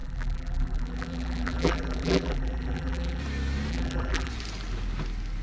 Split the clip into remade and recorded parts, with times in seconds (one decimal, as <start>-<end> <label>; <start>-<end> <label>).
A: 0.0-3.2 remade; 3.2-3.7 recorded; 3.7-4.3 remade; 4.3-5.4 recorded